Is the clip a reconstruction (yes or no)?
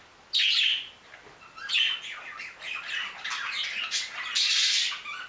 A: no